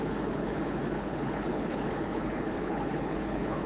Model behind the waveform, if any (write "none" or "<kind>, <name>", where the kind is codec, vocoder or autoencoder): codec, HILCodec